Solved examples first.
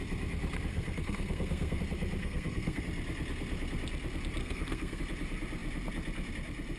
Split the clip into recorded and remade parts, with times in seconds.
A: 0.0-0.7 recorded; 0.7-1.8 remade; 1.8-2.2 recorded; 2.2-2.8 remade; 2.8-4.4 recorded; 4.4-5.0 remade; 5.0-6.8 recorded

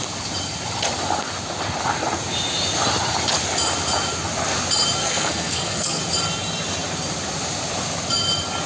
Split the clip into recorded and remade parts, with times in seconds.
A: 0.0-5.0 recorded; 5.0-6.0 remade; 6.0-8.7 recorded

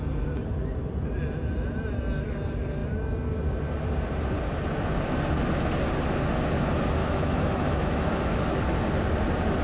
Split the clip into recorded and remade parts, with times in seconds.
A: 0.0-7.0 recorded; 7.0-8.6 remade; 8.6-9.6 recorded

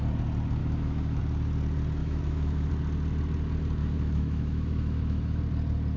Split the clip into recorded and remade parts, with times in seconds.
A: 0.0-0.6 recorded; 0.6-1.2 remade; 1.2-2.0 recorded; 2.0-2.7 remade; 2.7-3.8 recorded; 3.8-5.4 remade; 5.4-6.0 recorded

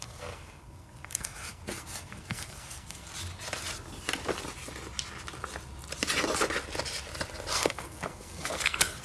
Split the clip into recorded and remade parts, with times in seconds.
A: 0.0-3.1 remade; 3.1-7.5 recorded; 7.5-9.0 remade